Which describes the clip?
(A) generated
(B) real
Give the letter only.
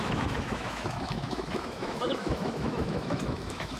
A